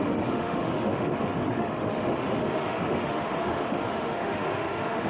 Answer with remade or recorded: remade